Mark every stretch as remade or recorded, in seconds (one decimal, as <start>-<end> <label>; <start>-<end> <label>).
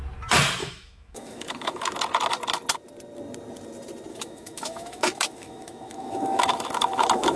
0.0-0.6 recorded; 0.6-1.8 remade; 1.8-4.1 recorded; 4.1-7.4 remade